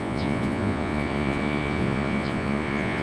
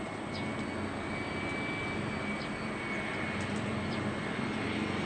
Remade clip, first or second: first